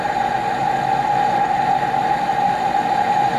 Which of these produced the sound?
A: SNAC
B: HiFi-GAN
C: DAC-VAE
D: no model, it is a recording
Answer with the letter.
D